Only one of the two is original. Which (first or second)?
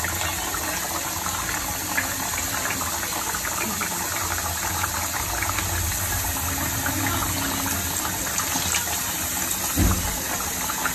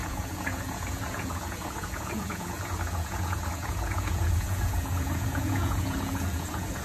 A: first